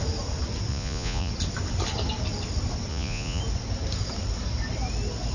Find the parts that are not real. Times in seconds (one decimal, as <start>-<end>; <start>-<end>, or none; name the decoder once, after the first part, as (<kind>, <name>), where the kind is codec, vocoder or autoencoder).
0.7-1.3 (vocoder, Vocos); 2.9-3.4